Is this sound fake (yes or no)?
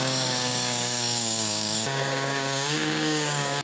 yes